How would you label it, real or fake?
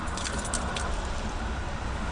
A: fake